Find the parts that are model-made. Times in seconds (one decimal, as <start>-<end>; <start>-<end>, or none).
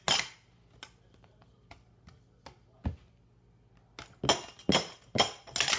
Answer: none